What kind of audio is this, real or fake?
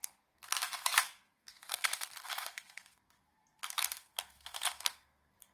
fake